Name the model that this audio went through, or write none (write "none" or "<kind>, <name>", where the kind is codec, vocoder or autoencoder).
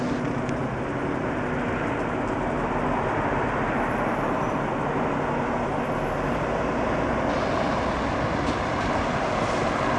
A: none